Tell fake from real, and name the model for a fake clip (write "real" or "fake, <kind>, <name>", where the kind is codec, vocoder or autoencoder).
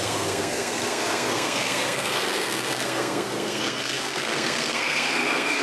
fake, codec, SNAC